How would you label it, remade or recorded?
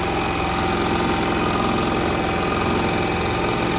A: recorded